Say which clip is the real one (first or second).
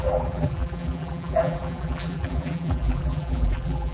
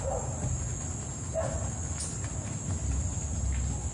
second